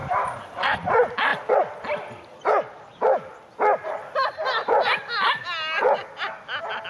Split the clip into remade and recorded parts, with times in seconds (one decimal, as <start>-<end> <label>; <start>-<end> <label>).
0.0-0.9 remade; 0.9-3.8 recorded; 3.8-5.0 remade; 5.0-6.9 recorded